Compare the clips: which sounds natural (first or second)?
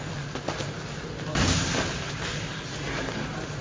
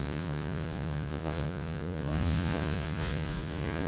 first